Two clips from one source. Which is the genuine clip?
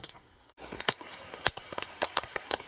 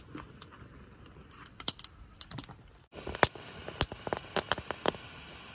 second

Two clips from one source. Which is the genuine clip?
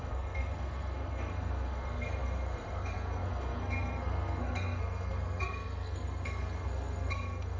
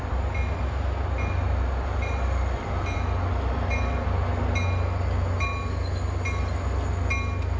second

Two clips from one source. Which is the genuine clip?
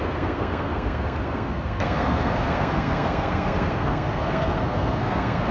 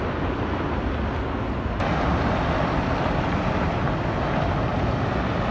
second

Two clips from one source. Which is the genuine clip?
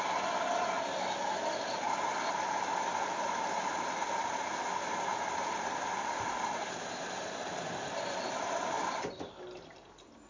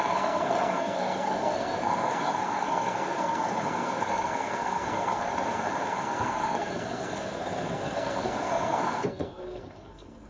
first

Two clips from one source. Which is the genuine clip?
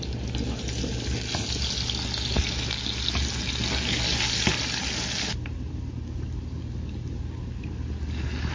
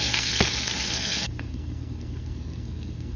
first